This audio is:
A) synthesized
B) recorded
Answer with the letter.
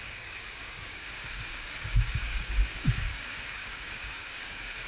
A